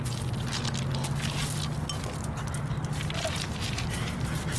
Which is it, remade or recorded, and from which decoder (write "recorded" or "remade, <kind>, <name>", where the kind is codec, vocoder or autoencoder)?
recorded